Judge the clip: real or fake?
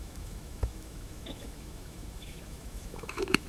fake